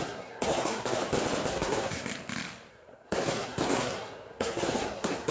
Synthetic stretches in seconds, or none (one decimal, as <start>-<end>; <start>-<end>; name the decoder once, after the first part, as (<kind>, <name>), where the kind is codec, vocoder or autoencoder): 0.0-1.0 (codec, SNAC); 1.5-2.1; 2.7-5.3

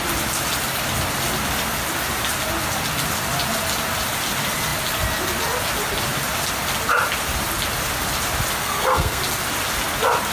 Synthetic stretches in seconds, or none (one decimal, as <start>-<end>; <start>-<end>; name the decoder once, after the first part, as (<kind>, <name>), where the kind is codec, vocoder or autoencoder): 8.6-9.2 (codec, SNAC)

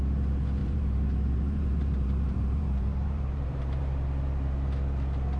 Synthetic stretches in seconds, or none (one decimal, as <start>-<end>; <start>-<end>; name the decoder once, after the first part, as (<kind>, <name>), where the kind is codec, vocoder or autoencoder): 0.6-3.8 (vocoder, BigVGAN v2)

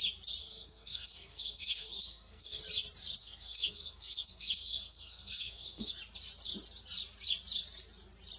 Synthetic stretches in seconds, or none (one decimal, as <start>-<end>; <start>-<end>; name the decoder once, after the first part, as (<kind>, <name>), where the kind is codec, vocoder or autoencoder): 0.4-2.6 (codec, SNAC); 3.2-5.9

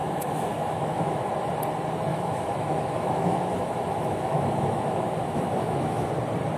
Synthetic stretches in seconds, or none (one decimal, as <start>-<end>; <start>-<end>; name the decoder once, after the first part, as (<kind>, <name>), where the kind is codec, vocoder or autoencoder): 0.0-1.3 (autoencoder, DAC-VAE); 2.1-6.1

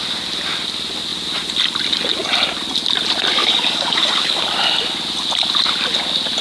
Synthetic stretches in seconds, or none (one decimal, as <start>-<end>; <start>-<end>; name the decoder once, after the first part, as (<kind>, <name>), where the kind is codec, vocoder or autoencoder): 3.4-4.4 (codec, DAC)

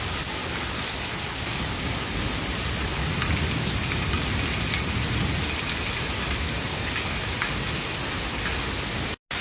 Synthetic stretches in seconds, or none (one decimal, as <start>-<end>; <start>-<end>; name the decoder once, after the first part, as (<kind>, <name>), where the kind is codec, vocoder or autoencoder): 0.4-2.3 (codec, DAC); 6.7-7.3